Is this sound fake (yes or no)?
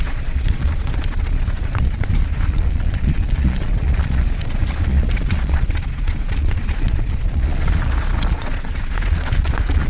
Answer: yes